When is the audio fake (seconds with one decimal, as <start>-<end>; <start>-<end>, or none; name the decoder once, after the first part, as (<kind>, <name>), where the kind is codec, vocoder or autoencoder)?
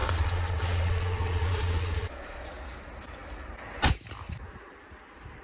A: 0.0-2.5 (vocoder, Vocos)